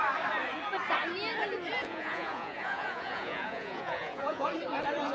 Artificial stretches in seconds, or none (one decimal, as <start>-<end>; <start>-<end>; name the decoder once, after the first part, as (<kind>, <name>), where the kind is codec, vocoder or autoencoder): 1.8-4.5 (vocoder, Vocos)